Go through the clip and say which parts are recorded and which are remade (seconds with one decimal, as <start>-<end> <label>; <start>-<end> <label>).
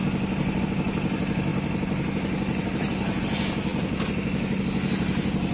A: 0.0-5.5 recorded